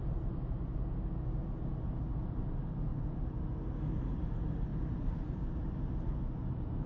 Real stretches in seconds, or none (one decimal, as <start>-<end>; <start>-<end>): 0.0-2.9; 4.2-4.7; 5.5-6.9